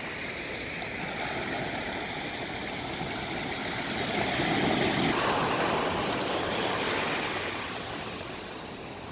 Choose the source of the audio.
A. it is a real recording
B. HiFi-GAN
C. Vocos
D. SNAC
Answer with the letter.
A